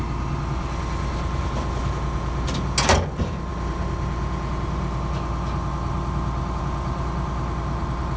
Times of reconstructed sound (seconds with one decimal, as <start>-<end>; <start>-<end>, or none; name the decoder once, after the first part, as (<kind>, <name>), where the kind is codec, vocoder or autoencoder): none